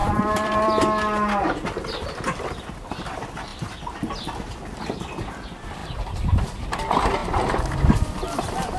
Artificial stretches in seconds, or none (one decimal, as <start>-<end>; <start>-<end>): 0.0-0.8; 3.5-4.1